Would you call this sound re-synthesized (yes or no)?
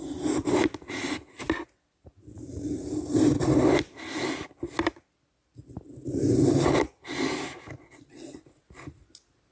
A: no